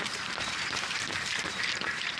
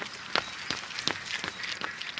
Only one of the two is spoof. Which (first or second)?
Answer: first